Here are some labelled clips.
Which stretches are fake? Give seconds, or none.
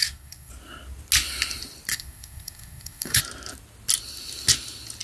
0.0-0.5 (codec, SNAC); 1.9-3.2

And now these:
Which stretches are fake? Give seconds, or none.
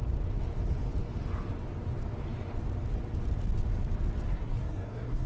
4.3-5.3 (codec, SNAC)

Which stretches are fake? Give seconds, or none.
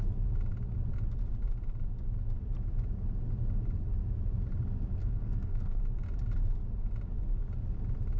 5.0-5.8 (codec, SNAC)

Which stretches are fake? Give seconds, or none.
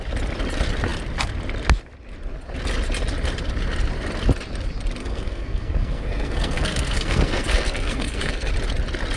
5.0-8.5 (codec, SNAC)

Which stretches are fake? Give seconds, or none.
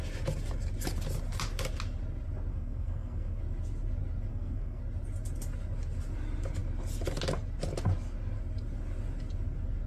2.5-3.4 (codec, SNAC); 4.3-4.8